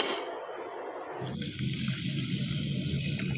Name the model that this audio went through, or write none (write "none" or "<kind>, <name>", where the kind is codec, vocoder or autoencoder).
none